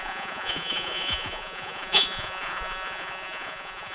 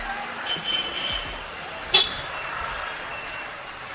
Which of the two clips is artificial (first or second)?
first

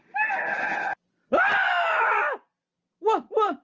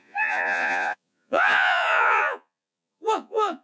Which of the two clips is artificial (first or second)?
second